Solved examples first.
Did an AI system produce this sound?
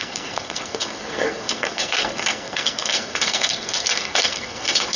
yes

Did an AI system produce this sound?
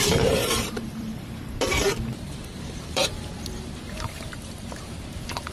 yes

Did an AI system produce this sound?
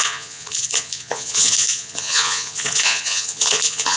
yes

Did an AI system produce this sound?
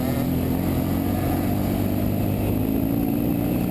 no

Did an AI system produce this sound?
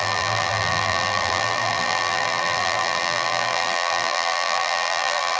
yes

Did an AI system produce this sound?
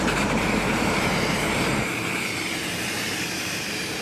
yes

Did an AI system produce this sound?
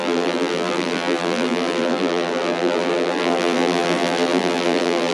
yes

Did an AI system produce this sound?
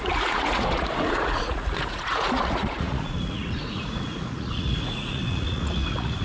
yes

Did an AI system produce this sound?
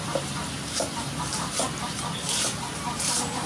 no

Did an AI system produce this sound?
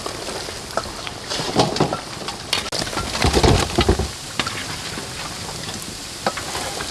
no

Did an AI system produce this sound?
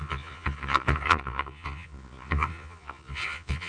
yes